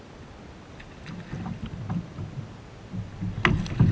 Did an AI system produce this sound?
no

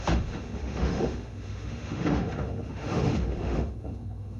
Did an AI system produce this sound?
yes